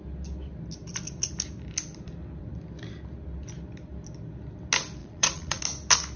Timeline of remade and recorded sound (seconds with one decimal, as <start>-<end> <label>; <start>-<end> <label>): 0.0-5.0 recorded; 5.0-5.6 remade; 5.6-6.2 recorded